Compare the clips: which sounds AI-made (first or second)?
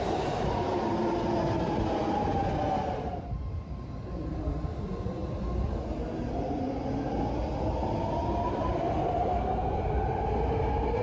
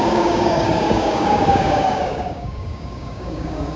second